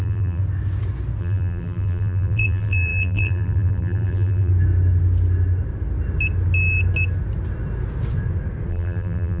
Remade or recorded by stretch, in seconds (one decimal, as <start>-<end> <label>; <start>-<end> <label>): 0.0-0.4 remade; 0.4-1.2 recorded; 1.2-4.5 remade; 4.5-8.7 recorded; 8.7-9.4 remade